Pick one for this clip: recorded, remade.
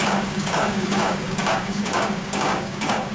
remade